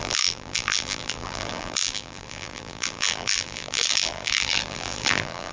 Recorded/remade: remade